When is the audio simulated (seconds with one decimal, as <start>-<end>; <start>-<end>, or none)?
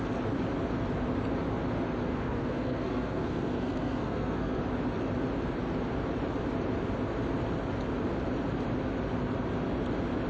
2.1-4.6